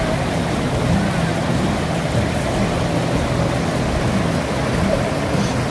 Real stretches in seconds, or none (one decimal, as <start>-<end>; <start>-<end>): 0.0-5.7